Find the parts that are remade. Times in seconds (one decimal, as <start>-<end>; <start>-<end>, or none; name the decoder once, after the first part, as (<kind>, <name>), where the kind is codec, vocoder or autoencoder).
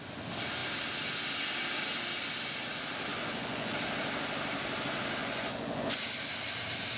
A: 3.1-3.7 (vocoder, Vocos); 5.2-6.0